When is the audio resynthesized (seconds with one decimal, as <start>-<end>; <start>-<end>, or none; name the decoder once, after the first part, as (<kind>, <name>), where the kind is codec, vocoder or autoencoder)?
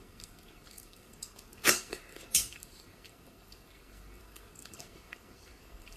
0.0-6.0 (codec, SNAC)